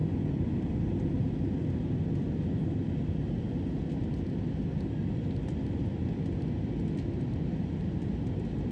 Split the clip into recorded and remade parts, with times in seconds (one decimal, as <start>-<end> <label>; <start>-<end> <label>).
0.0-8.7 recorded